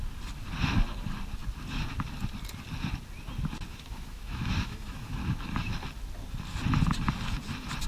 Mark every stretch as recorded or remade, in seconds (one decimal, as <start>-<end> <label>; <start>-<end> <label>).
0.0-3.7 recorded; 3.7-5.2 remade; 5.2-7.9 recorded